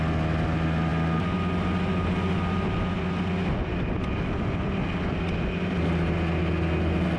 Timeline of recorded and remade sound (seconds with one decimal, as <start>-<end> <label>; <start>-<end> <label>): 0.0-7.2 recorded

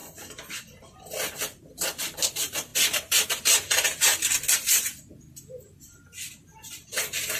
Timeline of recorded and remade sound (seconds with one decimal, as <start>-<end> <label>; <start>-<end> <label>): 0.0-7.4 recorded

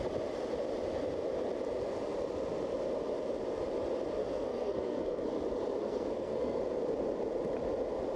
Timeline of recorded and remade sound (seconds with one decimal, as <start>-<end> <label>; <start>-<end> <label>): 0.0-4.2 recorded; 4.2-5.2 remade; 5.2-5.8 recorded; 5.8-6.6 remade; 6.6-8.2 recorded

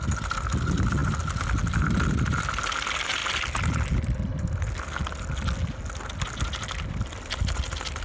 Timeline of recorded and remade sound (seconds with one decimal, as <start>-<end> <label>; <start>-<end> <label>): 0.0-8.0 recorded

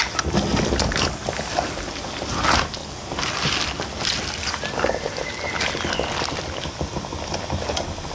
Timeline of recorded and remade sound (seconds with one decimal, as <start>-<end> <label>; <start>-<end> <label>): 0.0-8.1 recorded

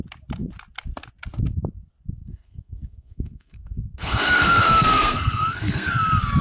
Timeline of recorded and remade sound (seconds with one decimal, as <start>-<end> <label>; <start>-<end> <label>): 0.0-2.2 recorded; 2.2-5.9 remade; 5.9-6.4 recorded

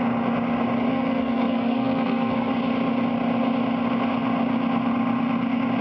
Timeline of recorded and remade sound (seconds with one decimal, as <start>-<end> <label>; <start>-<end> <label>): 0.0-0.9 recorded; 0.9-2.5 remade; 2.5-5.8 recorded